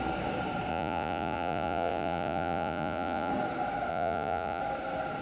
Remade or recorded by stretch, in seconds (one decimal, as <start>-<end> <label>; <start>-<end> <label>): 0.0-0.7 recorded; 0.7-3.3 remade; 3.3-3.9 recorded; 3.9-4.6 remade; 4.6-5.2 recorded